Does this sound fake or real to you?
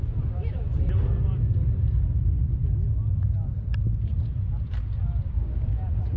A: real